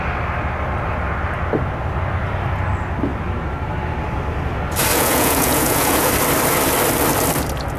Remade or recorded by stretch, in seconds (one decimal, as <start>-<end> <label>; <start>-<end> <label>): 0.0-4.9 recorded; 4.9-6.1 remade; 6.1-7.8 recorded